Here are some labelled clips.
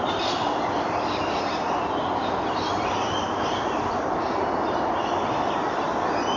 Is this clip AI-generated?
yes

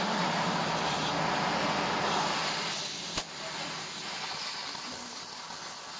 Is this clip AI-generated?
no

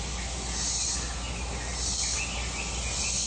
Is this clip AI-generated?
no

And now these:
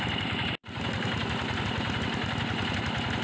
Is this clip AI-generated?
no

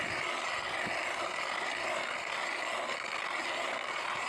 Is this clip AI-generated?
no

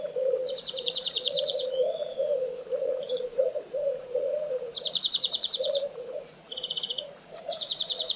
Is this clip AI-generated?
yes